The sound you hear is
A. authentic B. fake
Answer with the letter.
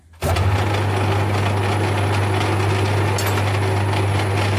A